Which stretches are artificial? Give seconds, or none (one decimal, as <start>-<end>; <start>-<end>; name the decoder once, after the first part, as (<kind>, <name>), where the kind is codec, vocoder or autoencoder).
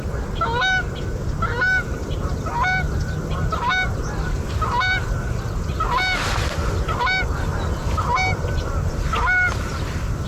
none